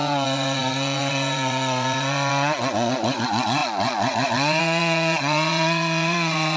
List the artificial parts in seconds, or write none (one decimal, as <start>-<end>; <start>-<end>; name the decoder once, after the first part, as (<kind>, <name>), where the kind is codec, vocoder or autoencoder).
0.0-6.6 (vocoder, Vocos)